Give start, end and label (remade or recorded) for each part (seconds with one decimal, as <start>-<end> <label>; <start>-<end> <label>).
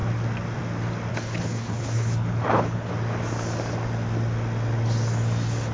0.0-1.1 recorded; 1.1-2.9 remade; 2.9-5.7 recorded